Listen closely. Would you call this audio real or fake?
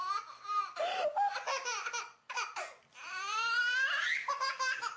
real